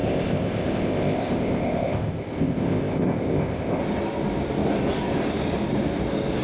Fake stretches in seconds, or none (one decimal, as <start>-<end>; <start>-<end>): 0.0-3.8